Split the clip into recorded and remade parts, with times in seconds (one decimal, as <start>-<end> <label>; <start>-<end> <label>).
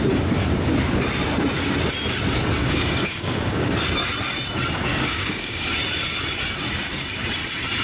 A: 0.0-2.6 recorded; 2.6-3.7 remade; 3.7-4.9 recorded; 4.9-5.6 remade; 5.6-7.8 recorded